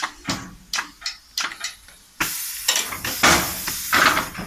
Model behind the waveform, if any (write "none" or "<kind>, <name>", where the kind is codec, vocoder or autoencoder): none